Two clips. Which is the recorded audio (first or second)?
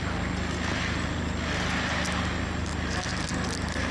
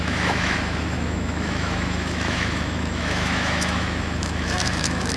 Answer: first